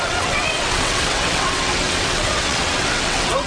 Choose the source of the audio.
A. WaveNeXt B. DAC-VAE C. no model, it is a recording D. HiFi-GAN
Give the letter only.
A